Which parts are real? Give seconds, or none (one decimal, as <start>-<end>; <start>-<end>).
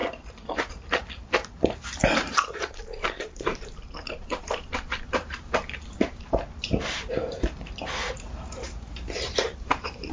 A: 0.0-0.7